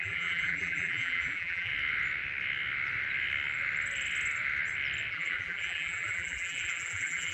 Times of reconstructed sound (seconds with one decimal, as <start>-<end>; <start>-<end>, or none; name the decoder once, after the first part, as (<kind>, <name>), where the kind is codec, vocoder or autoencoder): 0.0-1.7 (vocoder, BigVGAN v2); 5.1-7.3